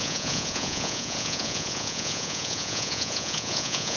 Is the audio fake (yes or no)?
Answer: yes